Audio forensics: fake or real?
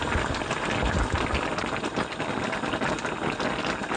real